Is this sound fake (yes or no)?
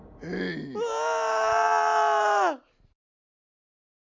no